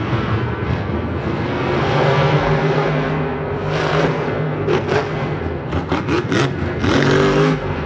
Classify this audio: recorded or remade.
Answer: remade